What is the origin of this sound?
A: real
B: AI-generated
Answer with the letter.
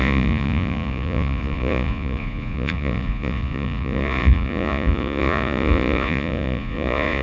B